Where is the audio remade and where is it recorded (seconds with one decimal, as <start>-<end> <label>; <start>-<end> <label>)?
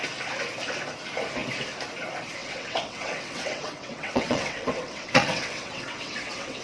0.0-2.4 recorded; 2.4-6.6 remade